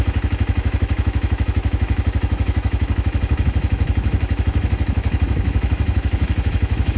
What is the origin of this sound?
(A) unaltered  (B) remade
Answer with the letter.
B